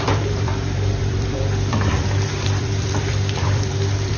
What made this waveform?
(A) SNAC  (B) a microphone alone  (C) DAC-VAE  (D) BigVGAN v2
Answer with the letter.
D